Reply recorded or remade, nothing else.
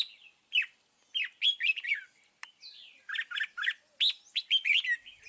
recorded